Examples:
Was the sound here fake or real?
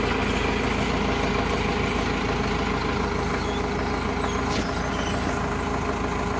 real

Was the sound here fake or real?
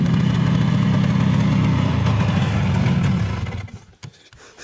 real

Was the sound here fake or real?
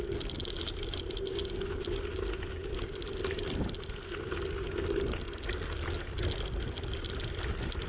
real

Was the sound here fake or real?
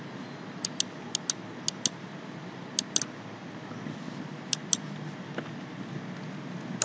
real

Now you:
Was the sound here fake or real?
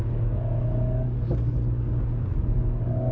fake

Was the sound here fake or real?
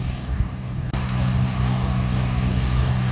fake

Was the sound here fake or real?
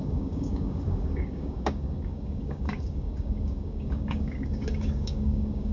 fake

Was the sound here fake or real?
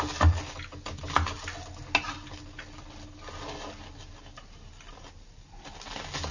real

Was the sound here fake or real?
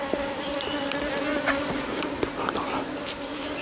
real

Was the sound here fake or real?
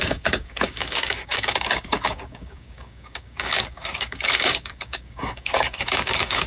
fake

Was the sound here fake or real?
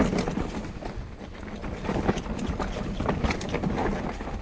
real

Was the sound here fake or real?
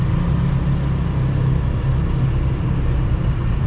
real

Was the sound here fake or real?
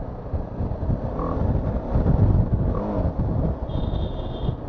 real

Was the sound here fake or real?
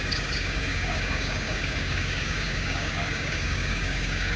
fake